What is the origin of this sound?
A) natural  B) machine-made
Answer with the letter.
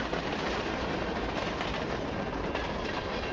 A